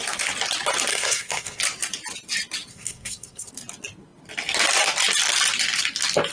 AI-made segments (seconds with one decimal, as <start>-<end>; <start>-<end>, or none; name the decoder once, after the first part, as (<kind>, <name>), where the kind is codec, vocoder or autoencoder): 0.9-1.6 (codec, SNAC); 2.7-3.5